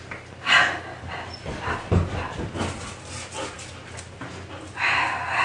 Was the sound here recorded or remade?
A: recorded